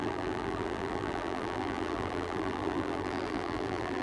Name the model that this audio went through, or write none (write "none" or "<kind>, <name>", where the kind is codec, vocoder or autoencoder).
vocoder, BigVGAN v2